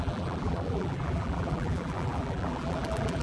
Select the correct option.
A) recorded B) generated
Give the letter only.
B